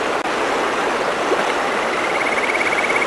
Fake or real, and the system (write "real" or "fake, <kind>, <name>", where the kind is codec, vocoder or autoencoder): real